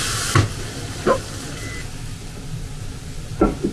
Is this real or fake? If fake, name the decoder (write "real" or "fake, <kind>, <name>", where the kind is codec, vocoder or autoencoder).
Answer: real